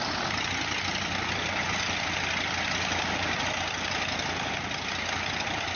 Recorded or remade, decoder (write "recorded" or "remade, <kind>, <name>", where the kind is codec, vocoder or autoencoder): recorded